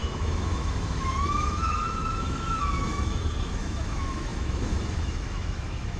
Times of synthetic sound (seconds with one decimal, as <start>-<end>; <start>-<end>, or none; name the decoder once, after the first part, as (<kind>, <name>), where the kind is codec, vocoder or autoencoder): 0.0-6.0 (autoencoder, DAC-VAE)